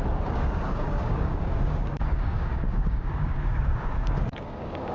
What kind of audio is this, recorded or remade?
remade